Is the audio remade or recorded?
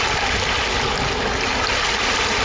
recorded